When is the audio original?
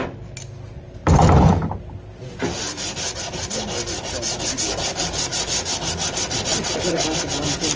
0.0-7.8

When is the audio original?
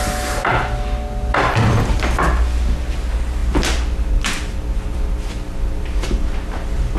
0.0-7.0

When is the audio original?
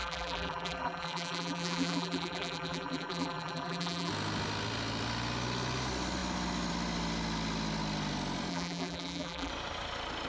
4.1-8.5; 9.5-10.3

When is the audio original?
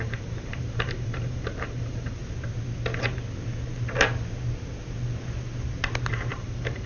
2.2-6.3